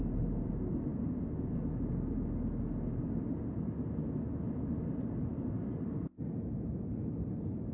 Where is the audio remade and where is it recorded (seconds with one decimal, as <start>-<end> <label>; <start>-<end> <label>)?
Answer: 0.0-0.9 remade; 0.9-5.0 recorded; 5.0-5.7 remade; 5.7-6.2 recorded; 6.2-7.7 remade